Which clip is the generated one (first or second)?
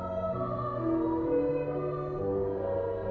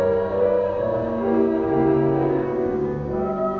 second